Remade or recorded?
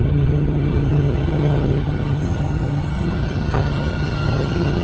remade